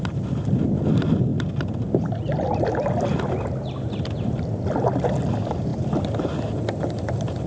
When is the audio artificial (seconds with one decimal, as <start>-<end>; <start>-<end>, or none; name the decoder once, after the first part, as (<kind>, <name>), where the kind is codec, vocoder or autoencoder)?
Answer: none